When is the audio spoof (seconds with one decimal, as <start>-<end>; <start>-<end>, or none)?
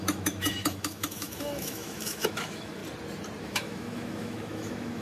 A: 0.0-2.8; 3.4-5.0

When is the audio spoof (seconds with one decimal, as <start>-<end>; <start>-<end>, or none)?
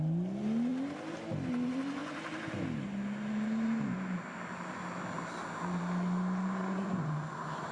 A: 6.6-7.7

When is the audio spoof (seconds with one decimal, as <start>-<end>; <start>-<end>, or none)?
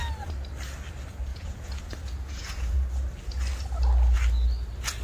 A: 1.3-2.9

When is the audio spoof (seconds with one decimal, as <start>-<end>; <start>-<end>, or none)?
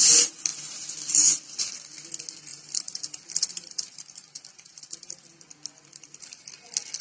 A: 2.5-5.2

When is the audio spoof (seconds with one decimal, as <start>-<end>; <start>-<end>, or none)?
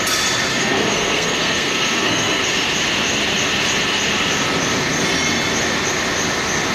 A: 0.5-2.4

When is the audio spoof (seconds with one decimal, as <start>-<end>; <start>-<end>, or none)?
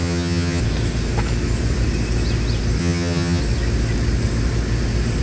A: 0.0-0.6; 2.8-3.4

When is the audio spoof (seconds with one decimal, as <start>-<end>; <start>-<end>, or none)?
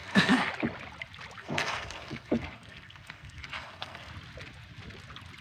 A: 0.0-0.5; 1.4-4.1